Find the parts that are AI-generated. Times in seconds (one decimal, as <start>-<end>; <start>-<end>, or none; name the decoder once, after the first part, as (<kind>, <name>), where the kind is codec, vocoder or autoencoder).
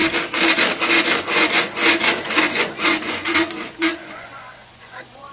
1.2-5.3 (vocoder, Vocos)